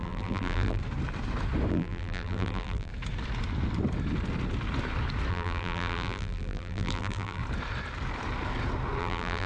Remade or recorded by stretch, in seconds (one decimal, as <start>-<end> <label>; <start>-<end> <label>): 0.0-0.8 remade; 0.8-1.7 recorded; 1.7-2.9 remade; 2.9-5.3 recorded; 5.3-7.4 remade; 7.4-9.0 recorded; 9.0-9.5 remade